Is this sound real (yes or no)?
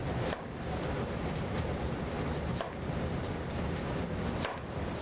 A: yes